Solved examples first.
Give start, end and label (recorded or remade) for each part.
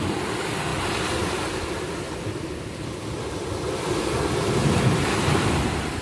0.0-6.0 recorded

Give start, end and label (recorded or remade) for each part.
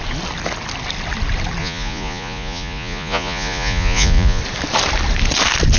0.0-1.6 recorded; 1.6-4.4 remade; 4.4-5.8 recorded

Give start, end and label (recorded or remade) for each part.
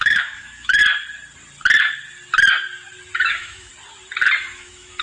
0.0-0.8 remade; 0.8-3.3 recorded; 3.3-3.7 remade; 3.7-4.4 recorded; 4.4-5.0 remade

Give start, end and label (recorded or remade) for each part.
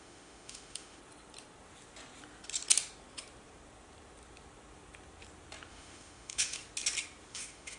0.0-1.0 remade; 1.0-5.7 recorded; 5.7-6.6 remade; 6.6-7.3 recorded; 7.3-7.8 remade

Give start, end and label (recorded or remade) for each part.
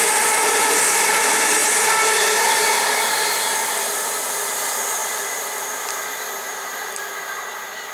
0.0-7.9 recorded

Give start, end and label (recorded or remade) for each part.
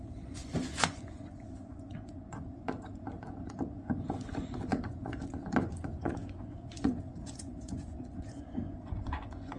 0.0-9.6 remade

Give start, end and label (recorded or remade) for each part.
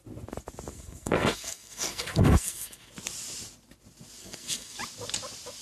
0.0-0.7 recorded; 0.7-2.9 remade; 2.9-4.2 recorded; 4.2-4.8 remade; 4.8-5.6 recorded